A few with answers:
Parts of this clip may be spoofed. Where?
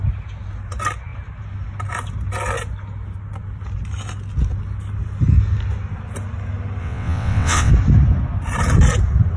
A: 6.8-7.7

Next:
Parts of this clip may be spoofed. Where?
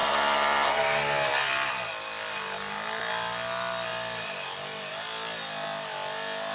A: none